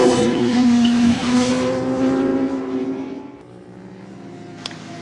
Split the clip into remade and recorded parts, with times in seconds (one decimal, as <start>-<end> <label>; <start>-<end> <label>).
0.0-1.5 remade; 1.5-5.0 recorded